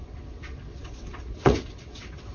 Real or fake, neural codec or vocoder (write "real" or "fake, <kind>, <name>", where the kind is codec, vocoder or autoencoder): fake, vocoder, WaveNeXt